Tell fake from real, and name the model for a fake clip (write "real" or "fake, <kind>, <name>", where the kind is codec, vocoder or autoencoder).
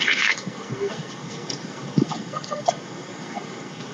fake, codec, SNAC